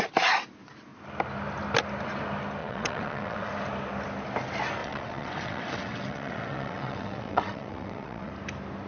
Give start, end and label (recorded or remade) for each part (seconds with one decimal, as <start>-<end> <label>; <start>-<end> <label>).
0.0-2.6 recorded; 2.6-3.5 remade; 3.5-4.8 recorded; 4.8-8.3 remade; 8.3-8.9 recorded